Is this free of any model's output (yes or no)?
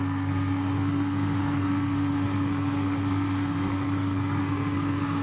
no